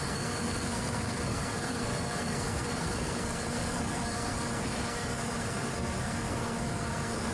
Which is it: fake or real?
fake